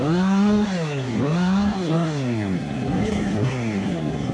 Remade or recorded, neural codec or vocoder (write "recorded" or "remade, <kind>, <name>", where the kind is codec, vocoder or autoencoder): remade, codec, SNAC